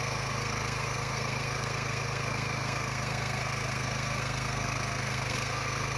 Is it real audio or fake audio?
fake